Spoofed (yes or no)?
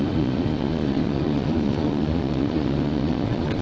yes